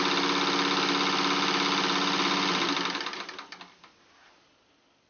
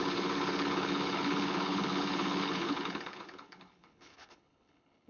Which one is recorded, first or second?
first